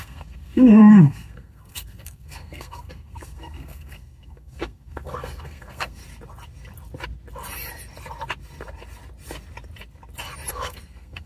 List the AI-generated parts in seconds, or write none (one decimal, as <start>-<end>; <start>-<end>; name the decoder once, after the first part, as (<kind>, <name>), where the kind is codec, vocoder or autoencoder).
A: 0.0-6.0 (codec, SNAC); 10.5-11.3